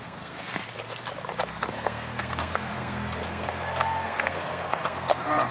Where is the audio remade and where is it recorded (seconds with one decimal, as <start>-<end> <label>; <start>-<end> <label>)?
0.0-0.6 remade; 0.6-1.5 recorded; 1.5-5.5 remade